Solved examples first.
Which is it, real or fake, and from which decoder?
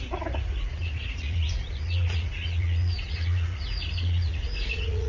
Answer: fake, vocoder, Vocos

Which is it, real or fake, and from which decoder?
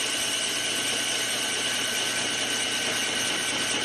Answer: real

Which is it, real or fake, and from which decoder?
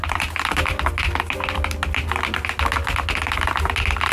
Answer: real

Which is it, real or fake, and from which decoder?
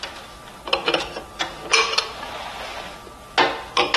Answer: real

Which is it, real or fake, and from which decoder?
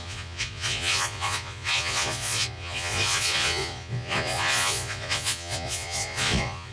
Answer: fake, vocoder, Vocos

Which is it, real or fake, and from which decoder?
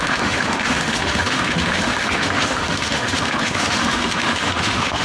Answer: fake, autoencoder, DAC-VAE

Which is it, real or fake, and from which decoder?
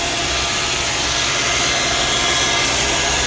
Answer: real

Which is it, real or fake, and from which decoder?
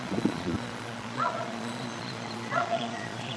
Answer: fake, vocoder, Vocos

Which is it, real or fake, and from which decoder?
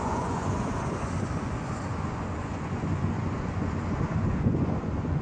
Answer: fake, vocoder, Vocos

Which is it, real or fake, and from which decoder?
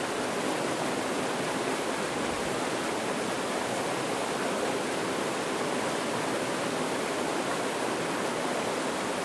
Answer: real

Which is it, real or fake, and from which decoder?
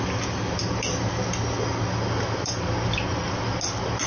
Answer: real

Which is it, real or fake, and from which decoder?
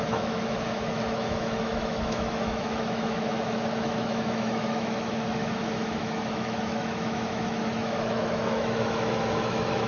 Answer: fake, autoencoder, DAC-VAE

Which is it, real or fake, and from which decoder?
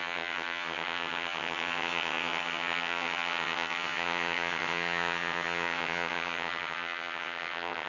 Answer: fake, vocoder, HiFi-GAN